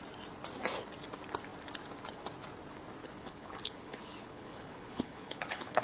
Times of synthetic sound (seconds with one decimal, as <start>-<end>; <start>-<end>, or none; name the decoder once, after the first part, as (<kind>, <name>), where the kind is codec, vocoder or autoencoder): 3.0-5.8 (codec, HILCodec)